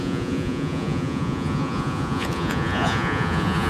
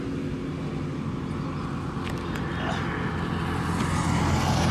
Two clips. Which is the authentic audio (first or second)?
second